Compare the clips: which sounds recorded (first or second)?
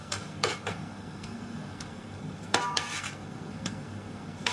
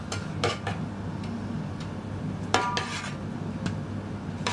second